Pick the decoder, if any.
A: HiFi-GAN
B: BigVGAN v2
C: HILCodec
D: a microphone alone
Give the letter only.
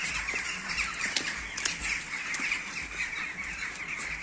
D